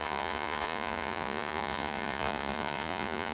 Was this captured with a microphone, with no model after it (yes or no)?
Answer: no